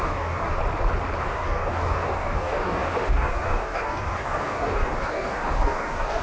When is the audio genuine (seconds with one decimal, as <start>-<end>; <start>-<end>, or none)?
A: 0.6-1.2